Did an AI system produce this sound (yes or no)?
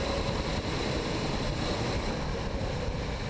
no